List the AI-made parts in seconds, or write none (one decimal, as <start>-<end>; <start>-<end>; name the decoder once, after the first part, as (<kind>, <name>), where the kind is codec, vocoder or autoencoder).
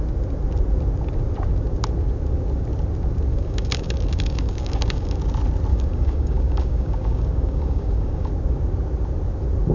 3.3-5.2 (codec, DAC); 5.7-8.3